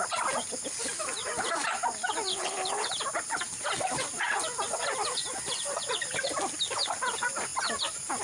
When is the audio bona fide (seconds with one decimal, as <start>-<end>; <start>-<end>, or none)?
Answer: 0.0-2.3; 2.9-8.2